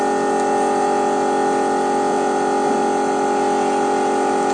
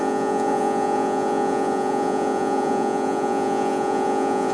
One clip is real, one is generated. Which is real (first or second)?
first